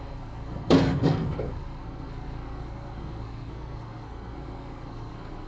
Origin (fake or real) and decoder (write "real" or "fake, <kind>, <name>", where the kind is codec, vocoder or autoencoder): fake, codec, SNAC